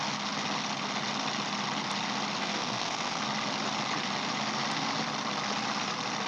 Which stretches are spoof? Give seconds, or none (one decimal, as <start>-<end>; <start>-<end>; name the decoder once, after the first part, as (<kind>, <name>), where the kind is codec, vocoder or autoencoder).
2.4-3.2 (codec, SNAC)